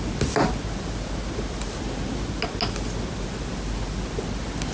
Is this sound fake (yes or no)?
no